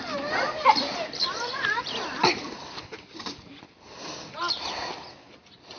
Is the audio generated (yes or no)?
no